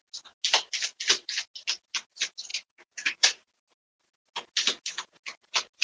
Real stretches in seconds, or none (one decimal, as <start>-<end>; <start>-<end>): 0.0-2.5; 3.5-5.8